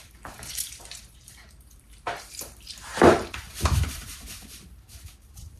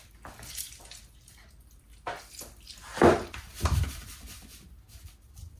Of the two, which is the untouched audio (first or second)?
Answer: second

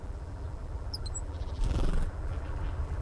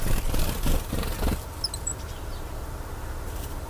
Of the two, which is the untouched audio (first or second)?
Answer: second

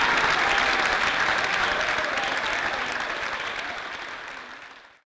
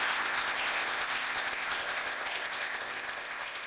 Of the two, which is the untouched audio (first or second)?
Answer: first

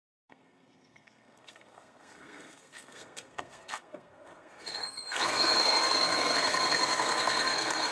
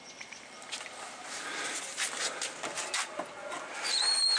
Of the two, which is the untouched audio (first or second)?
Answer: second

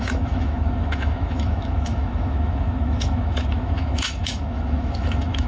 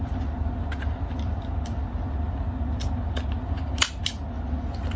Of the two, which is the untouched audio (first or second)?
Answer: second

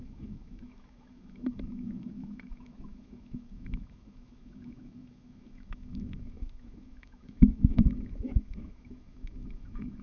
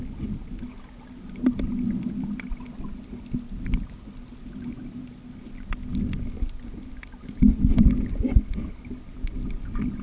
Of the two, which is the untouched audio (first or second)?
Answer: second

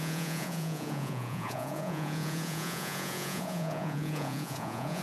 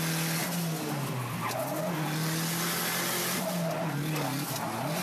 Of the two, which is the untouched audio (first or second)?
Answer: second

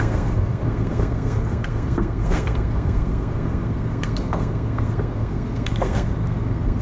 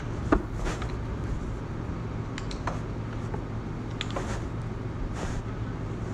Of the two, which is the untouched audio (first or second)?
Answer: second